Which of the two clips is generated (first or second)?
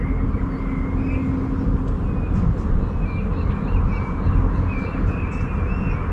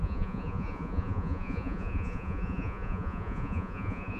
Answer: second